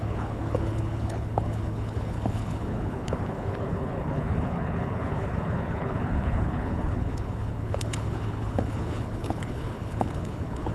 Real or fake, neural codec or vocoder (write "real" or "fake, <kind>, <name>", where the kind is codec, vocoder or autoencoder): fake, codec, HILCodec